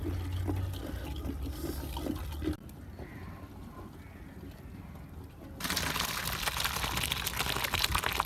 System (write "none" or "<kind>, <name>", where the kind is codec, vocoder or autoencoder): none